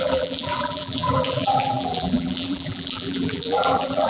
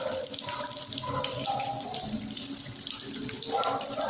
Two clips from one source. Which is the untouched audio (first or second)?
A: second